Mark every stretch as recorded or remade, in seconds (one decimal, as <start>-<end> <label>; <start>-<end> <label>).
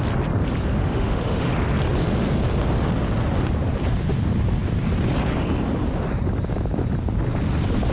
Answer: 0.0-0.8 recorded; 0.8-1.5 remade; 1.5-7.9 recorded